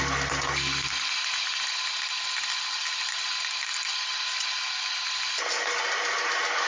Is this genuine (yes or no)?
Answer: yes